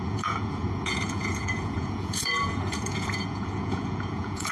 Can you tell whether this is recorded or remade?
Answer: remade